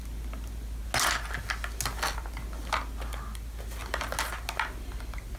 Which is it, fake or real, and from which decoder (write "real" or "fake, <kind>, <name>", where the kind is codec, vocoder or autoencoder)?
real